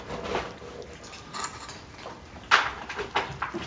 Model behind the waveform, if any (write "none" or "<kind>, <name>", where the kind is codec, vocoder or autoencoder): none